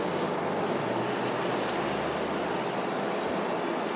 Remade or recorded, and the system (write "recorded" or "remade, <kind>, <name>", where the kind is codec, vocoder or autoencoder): recorded